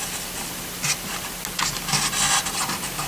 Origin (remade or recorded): recorded